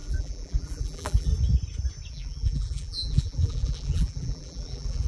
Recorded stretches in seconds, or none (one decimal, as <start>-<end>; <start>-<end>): 1.3-2.1